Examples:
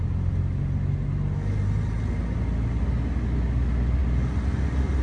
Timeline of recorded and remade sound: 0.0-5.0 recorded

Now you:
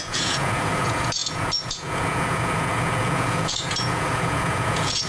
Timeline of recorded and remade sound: 0.0-5.1 remade

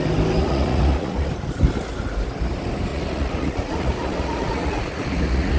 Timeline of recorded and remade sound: 0.0-0.4 recorded; 0.4-1.3 remade; 1.3-2.9 recorded; 2.9-5.6 remade

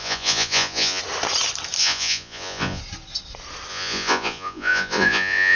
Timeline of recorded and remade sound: 0.0-1.0 remade; 1.0-1.8 recorded; 1.8-2.8 remade; 2.8-3.7 recorded; 3.7-5.6 remade

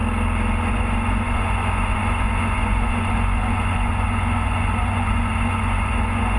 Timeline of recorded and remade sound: 0.0-0.7 recorded; 0.7-6.4 remade

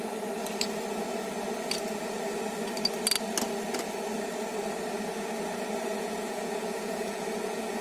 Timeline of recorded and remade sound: 0.0-5.9 recorded; 5.9-7.8 remade

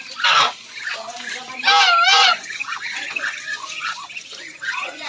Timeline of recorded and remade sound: 0.0-2.1 recorded; 2.1-5.1 remade

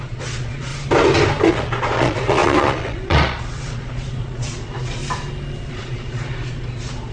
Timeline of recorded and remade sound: 0.0-0.7 remade; 0.7-1.5 recorded; 1.5-5.0 remade; 5.0-5.7 recorded; 5.7-7.1 remade